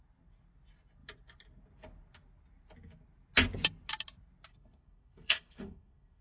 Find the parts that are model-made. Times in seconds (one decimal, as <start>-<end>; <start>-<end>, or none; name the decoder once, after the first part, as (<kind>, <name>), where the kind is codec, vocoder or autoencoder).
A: 4.5-6.2 (codec, SNAC)